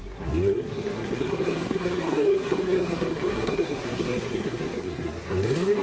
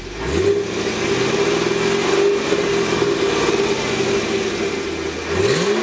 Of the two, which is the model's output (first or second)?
first